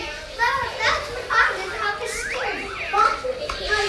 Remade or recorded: recorded